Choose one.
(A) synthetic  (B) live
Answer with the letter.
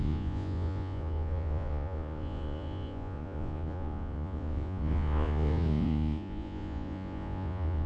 A